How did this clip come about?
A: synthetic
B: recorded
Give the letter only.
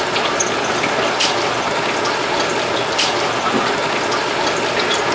B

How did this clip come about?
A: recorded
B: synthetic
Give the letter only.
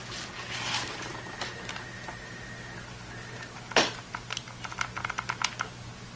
A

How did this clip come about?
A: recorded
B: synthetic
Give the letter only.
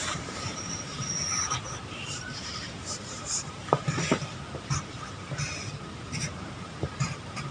B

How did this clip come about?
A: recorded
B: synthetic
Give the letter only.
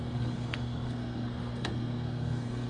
B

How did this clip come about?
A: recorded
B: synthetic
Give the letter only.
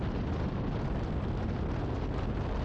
A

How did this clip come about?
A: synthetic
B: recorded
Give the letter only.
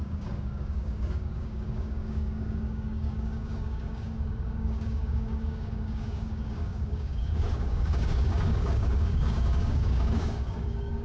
A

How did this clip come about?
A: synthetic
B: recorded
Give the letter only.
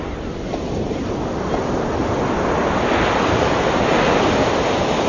A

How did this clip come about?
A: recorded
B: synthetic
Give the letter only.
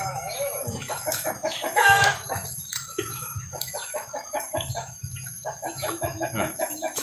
B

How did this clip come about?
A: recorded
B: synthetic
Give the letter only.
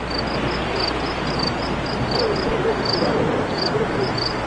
A